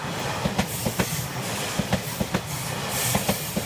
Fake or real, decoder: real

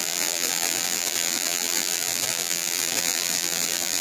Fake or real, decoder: fake, vocoder, BigVGAN v2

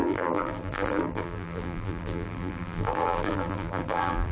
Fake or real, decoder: fake, vocoder, BigVGAN v2